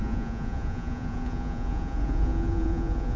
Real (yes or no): no